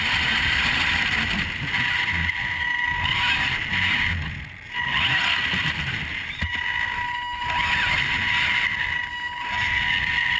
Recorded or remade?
recorded